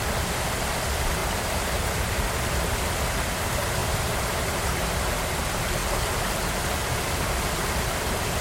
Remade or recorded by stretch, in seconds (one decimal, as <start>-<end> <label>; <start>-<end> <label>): 0.0-1.2 recorded; 1.2-2.3 remade; 2.3-3.8 recorded; 3.8-4.8 remade; 4.8-8.4 recorded